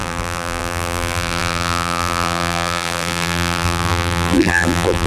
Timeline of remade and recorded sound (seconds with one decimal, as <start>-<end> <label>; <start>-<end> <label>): 0.0-5.1 remade